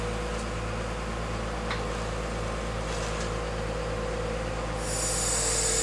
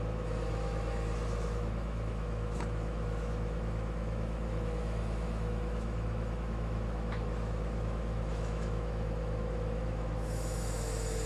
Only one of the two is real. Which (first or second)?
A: first